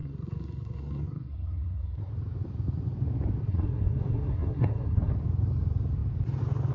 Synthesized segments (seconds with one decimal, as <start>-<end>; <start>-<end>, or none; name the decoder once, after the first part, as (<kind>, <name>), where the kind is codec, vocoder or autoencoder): 0.0-2.1 (codec, SNAC); 3.5-5.1